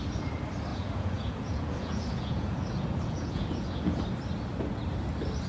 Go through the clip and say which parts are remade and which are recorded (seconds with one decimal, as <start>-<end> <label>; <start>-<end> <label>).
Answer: 0.0-0.7 recorded; 0.7-4.0 remade; 4.0-5.5 recorded